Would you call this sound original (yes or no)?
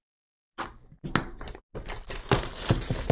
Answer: yes